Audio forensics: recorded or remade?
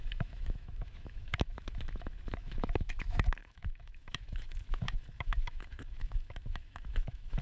remade